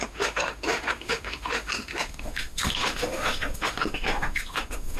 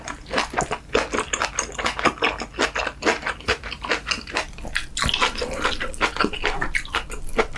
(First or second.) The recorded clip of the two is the second